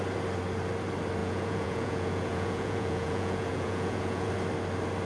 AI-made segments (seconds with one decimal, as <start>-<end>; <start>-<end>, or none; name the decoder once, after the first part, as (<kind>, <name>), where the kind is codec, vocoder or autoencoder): 1.2-4.3 (vocoder, Vocos)